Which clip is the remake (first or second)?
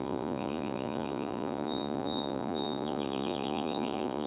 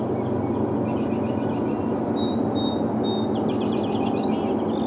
first